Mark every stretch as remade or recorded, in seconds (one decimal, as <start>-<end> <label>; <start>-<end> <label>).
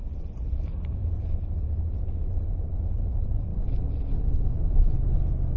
0.0-3.5 remade; 3.5-5.6 recorded